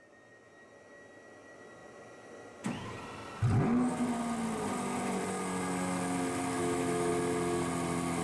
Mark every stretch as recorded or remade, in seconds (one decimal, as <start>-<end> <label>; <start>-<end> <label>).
0.0-6.6 recorded; 6.6-7.1 remade; 7.1-8.2 recorded